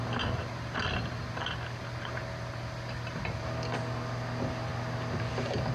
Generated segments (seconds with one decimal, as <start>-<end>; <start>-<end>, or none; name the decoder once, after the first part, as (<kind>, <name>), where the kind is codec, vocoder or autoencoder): none